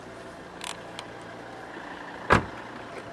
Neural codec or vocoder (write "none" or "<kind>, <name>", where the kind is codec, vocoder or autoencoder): none